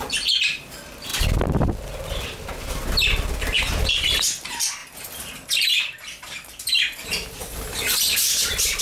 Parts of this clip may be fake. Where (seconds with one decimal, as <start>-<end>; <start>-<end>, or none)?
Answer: 0.0-8.8